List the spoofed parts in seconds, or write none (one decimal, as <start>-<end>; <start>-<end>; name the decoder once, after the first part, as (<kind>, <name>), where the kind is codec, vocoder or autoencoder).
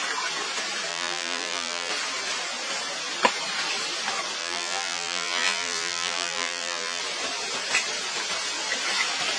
0.9-1.9 (vocoder, BigVGAN v2); 4.4-7.0